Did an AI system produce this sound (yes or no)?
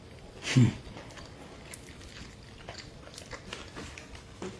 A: no